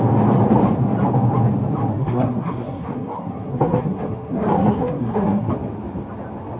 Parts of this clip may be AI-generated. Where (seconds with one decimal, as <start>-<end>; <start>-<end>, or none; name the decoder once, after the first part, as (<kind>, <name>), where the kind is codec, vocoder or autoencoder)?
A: 1.9-5.5 (codec, SNAC)